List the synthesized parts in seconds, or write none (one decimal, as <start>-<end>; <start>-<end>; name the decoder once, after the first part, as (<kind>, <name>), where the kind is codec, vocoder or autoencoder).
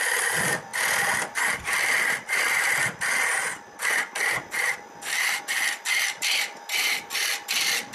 none